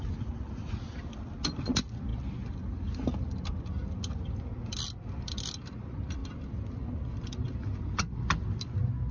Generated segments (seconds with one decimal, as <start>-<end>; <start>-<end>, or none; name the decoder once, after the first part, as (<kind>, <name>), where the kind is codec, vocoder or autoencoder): none